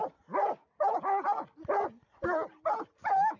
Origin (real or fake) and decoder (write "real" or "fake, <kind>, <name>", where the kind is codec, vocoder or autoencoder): real